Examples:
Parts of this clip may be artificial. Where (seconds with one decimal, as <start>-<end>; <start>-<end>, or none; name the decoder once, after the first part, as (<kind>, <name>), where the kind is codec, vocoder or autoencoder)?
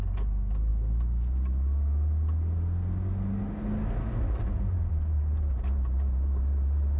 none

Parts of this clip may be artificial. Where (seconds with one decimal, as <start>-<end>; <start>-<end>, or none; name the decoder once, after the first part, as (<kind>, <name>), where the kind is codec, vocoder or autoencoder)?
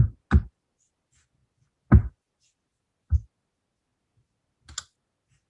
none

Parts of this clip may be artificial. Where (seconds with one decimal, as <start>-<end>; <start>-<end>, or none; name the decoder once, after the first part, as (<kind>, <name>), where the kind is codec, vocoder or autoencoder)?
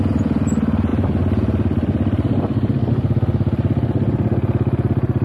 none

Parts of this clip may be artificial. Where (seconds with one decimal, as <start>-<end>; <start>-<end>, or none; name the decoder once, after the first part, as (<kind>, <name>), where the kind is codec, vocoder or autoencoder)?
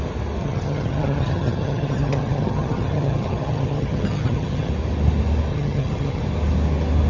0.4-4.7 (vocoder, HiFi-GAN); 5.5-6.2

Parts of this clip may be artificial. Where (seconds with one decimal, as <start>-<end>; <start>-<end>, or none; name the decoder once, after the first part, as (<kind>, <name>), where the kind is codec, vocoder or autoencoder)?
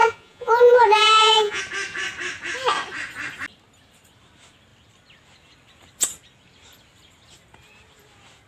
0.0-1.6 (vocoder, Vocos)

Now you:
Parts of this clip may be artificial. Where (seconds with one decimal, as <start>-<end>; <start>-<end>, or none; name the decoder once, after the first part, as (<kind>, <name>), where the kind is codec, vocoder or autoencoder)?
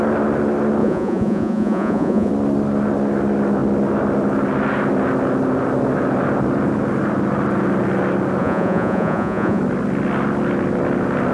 0.8-2.3 (vocoder, Vocos); 8.4-9.6